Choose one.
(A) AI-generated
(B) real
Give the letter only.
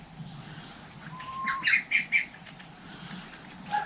B